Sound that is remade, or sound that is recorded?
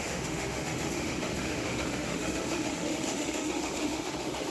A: remade